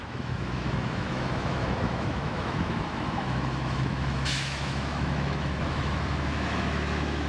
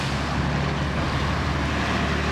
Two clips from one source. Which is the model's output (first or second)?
first